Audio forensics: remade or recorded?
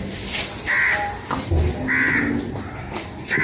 recorded